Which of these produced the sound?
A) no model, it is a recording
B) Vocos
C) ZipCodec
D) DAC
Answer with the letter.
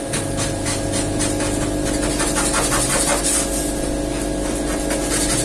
A